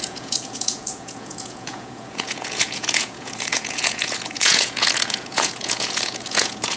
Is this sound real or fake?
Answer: fake